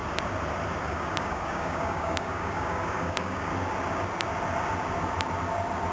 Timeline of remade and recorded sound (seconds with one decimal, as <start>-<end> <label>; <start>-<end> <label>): 0.0-0.8 recorded; 0.8-3.5 remade; 3.5-5.9 recorded